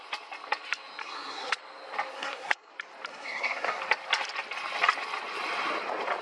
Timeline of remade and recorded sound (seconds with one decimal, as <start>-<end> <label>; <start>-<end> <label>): 0.0-1.0 recorded; 1.0-1.6 remade; 1.6-2.1 recorded; 2.1-2.7 remade; 2.7-3.1 recorded; 3.1-3.8 remade; 3.8-6.2 recorded